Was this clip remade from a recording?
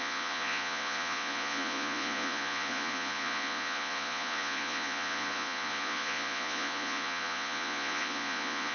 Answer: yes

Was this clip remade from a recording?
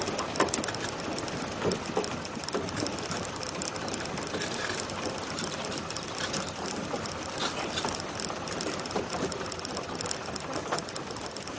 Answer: no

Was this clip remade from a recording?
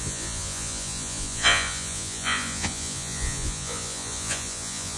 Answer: yes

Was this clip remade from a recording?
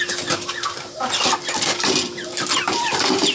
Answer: no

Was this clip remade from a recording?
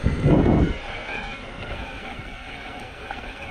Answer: yes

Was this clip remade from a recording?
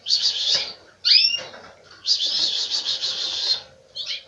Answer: no